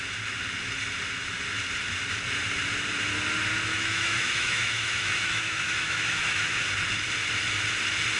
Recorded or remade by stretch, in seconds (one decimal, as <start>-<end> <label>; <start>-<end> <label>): 0.0-3.7 recorded; 3.7-6.6 remade; 6.6-8.2 recorded